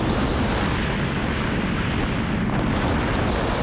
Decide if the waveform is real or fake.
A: real